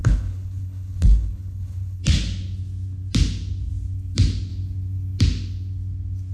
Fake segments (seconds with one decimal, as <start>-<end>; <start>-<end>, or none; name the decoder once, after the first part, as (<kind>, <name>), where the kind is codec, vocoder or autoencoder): 0.0-2.0 (codec, HILCodec)